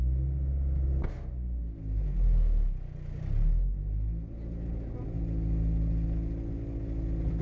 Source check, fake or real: real